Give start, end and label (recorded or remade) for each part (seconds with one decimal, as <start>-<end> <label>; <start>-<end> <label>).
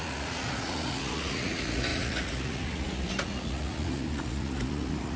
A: 0.0-5.2 remade